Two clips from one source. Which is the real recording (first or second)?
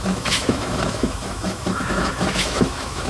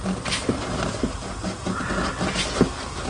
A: second